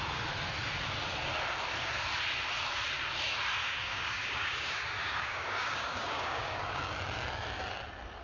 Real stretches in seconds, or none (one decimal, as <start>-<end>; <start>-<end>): 0.0-3.6; 6.8-8.2